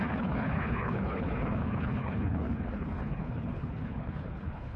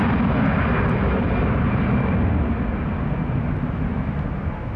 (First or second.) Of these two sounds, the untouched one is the second